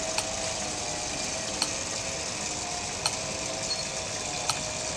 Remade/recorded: recorded